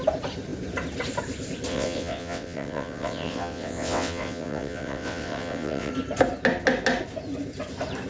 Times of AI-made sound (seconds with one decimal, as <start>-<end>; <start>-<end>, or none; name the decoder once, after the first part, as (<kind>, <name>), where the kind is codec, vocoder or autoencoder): 1.7-5.9 (vocoder, WaveNeXt)